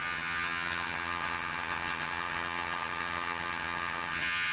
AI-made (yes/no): yes